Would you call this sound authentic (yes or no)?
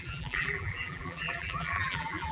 no